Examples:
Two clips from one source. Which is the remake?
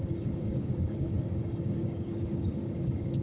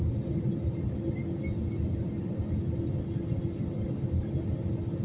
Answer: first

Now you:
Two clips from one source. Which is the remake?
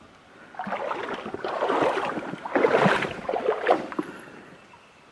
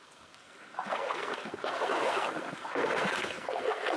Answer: second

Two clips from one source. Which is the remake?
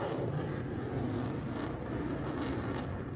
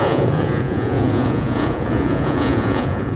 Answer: second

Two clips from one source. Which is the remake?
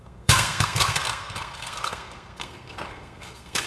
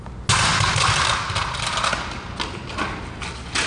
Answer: first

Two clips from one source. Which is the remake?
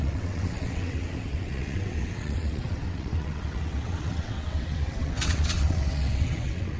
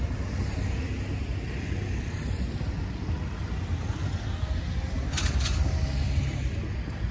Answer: first